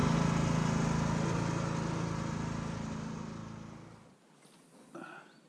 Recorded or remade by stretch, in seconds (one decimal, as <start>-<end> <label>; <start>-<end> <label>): 0.0-5.5 recorded